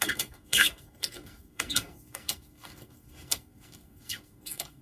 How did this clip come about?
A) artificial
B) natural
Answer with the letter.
A